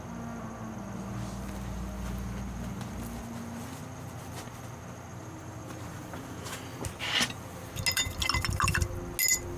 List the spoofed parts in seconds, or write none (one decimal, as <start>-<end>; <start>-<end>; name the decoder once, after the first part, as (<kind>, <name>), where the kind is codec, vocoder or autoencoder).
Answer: 5.1-6.6 (vocoder, BigVGAN v2)